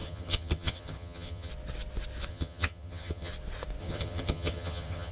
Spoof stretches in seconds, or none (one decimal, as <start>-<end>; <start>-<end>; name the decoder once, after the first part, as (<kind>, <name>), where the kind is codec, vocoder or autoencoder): 0.0-1.5 (vocoder, HiFi-GAN); 2.3-3.3; 3.8-5.1